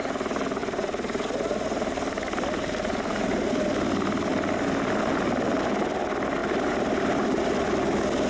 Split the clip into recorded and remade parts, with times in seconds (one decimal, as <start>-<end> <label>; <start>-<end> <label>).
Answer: 0.0-0.6 recorded; 0.6-3.5 remade; 3.5-6.4 recorded; 6.4-7.4 remade; 7.4-8.3 recorded